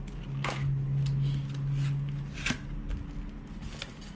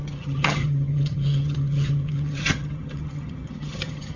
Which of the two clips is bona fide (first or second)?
first